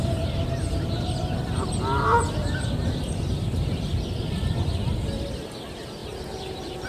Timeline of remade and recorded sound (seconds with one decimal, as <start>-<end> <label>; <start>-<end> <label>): 0.0-6.0 recorded; 6.0-6.9 remade